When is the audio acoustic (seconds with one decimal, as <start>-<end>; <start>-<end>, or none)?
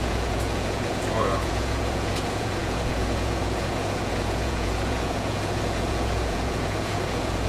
none